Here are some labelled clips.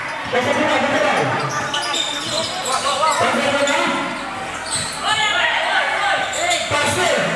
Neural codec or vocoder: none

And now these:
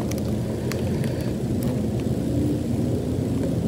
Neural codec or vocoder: none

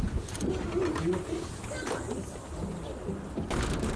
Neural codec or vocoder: none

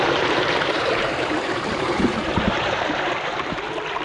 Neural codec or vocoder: vocoder, BigVGAN v2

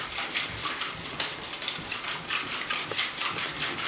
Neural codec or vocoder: vocoder, BigVGAN v2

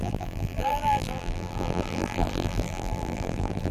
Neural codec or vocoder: vocoder, BigVGAN v2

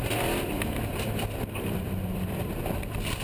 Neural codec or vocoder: vocoder, BigVGAN v2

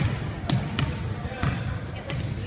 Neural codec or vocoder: none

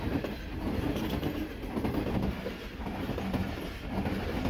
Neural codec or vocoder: none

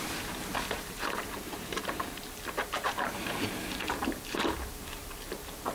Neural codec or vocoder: vocoder, BigVGAN v2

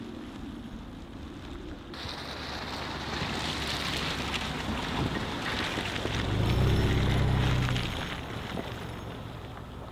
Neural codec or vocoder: none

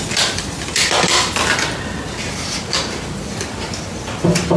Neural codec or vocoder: none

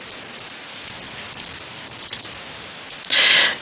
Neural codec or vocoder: none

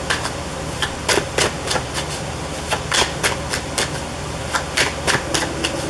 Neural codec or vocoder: none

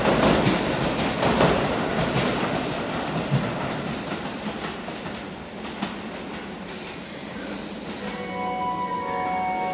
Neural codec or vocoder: none